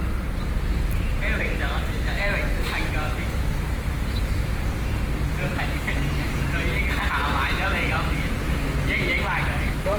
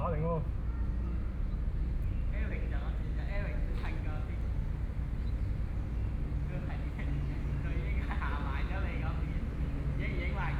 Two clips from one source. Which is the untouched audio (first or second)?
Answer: second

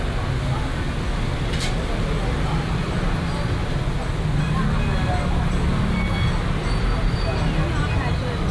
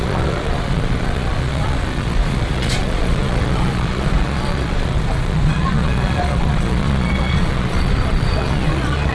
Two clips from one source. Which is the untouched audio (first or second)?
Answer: first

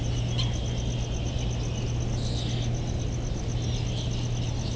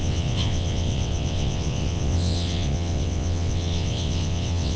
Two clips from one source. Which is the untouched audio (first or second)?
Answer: first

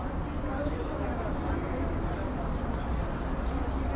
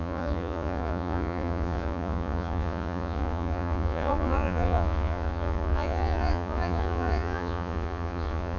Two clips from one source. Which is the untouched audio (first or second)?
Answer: first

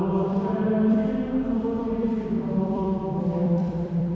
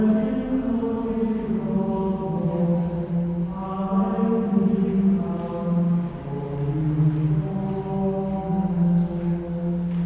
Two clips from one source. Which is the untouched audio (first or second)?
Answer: second